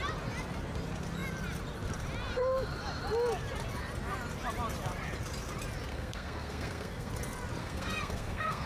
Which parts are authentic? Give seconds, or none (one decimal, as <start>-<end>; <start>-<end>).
0.0-5.9; 7.1-7.6